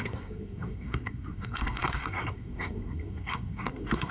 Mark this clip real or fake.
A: fake